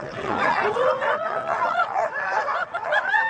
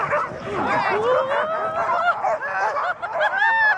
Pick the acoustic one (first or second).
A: second